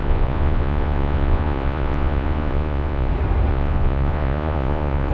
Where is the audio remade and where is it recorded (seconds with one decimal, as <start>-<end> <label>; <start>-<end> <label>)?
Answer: 0.0-3.1 remade; 3.1-3.5 recorded; 3.5-5.1 remade